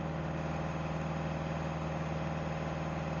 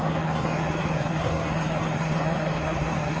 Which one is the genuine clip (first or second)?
first